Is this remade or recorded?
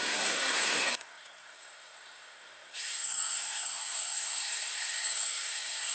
remade